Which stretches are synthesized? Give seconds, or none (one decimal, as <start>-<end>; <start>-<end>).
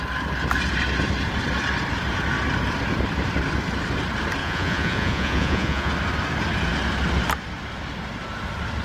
4.4-5.9